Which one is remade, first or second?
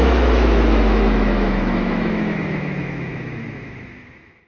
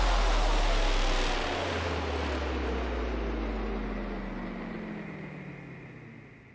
first